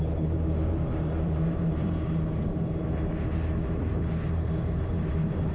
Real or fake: fake